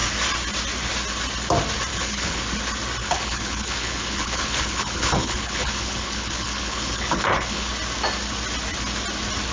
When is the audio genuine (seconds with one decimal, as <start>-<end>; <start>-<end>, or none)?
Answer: 0.0-1.9; 2.4-3.0; 7.7-9.5